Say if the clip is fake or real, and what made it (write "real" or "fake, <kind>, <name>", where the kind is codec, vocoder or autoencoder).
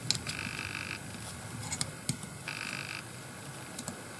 real